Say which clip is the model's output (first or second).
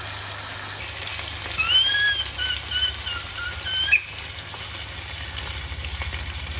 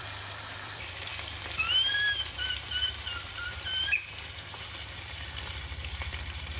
second